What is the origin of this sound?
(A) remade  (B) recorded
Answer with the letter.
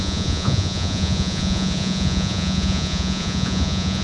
A